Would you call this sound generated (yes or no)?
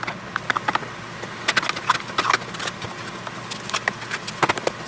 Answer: no